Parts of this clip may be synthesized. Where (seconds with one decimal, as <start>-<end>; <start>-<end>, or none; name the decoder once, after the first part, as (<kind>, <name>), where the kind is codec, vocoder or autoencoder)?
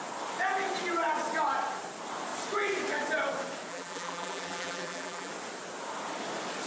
3.7-5.3 (vocoder, BigVGAN v2)